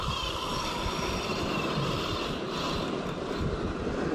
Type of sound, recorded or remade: remade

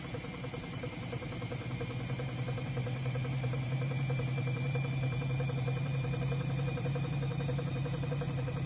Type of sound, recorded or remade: remade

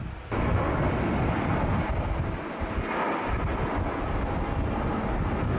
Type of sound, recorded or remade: recorded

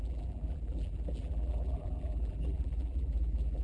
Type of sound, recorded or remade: remade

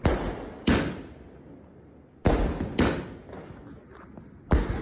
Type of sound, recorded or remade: recorded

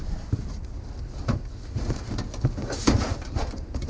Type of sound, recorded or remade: remade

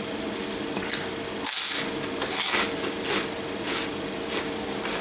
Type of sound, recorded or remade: recorded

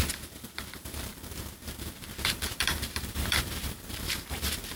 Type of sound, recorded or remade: remade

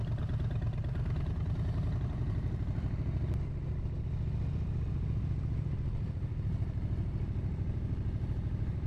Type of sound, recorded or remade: remade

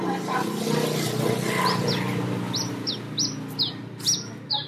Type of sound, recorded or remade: recorded